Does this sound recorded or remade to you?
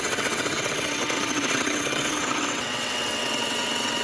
remade